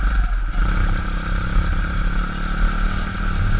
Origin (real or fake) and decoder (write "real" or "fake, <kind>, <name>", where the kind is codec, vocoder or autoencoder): real